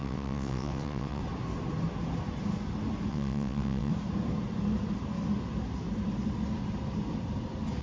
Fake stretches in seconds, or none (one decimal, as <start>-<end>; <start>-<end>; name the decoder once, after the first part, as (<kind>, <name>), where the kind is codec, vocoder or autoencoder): 0.0-1.2 (vocoder, WaveNeXt); 3.1-3.9